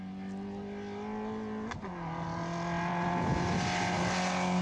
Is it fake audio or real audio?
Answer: real